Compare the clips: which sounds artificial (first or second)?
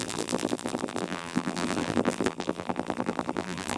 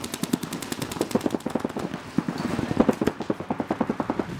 first